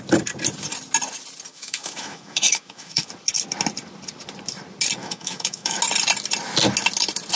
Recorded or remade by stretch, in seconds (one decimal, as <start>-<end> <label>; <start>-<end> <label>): 0.0-1.5 recorded; 1.5-3.1 remade; 3.1-5.0 recorded; 5.0-5.8 remade; 5.8-7.4 recorded